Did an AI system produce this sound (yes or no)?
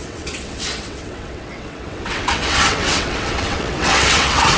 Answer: yes